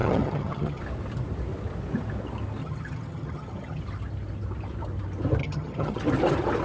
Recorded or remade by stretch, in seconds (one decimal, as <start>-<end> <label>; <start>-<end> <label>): 0.0-0.8 remade; 0.8-2.6 recorded; 2.6-3.8 remade; 3.8-5.4 recorded; 5.4-6.0 remade; 6.0-6.6 recorded